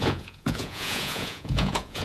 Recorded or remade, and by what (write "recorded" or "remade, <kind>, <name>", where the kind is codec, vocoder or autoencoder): remade, vocoder, Vocos